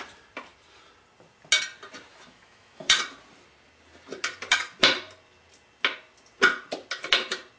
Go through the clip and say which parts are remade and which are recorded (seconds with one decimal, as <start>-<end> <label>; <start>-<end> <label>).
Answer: 0.0-2.1 recorded; 2.1-3.0 remade; 3.0-7.6 recorded